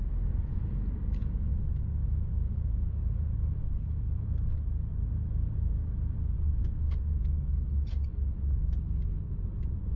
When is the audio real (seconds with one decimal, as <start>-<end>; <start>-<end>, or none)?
0.0-10.0